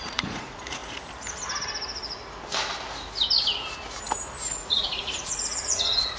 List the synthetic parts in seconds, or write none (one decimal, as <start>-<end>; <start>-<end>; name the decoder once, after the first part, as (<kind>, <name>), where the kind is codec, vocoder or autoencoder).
0.0-0.8 (vocoder, Vocos); 4.5-6.2